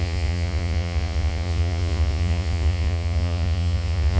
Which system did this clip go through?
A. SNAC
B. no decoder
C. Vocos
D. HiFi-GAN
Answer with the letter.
C